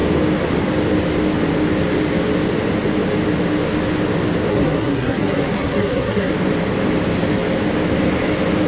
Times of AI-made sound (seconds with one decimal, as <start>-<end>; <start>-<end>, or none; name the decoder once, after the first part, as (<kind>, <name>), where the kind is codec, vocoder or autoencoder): 4.5-6.3 (codec, SNAC)